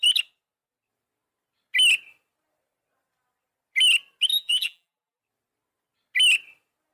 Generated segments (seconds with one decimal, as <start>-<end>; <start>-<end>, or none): 4.3-5.2